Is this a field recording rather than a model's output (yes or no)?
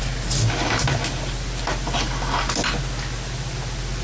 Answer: yes